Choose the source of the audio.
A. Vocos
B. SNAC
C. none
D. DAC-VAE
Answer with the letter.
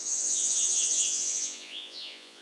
A